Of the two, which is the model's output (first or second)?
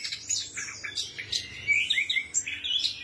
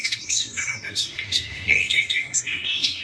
second